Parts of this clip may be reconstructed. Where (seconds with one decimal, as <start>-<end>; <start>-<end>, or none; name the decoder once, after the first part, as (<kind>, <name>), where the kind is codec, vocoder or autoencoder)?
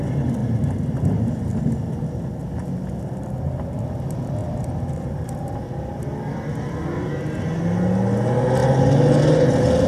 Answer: 4.4-6.0 (vocoder, BigVGAN v2)